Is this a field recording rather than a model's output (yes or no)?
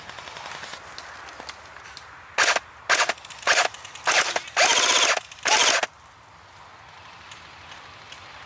yes